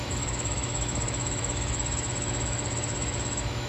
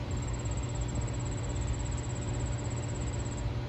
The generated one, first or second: first